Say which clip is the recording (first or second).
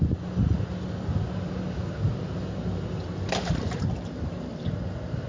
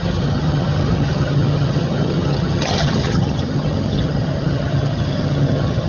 first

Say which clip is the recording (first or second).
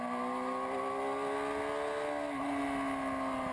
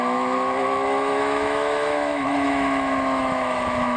first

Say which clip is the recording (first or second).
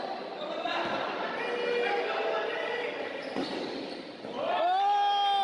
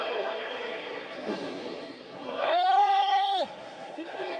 first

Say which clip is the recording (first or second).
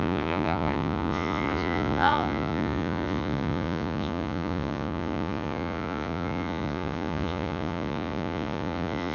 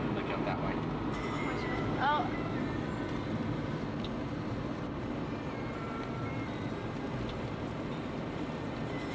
second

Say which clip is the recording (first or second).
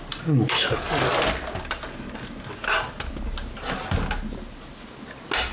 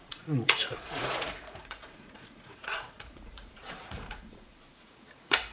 first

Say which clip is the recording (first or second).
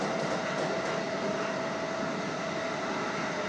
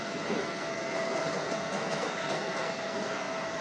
first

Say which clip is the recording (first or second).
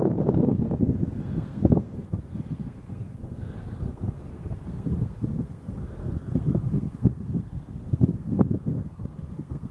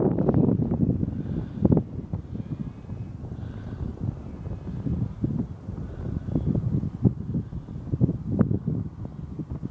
second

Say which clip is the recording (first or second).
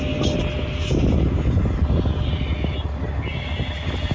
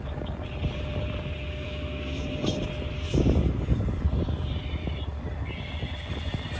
first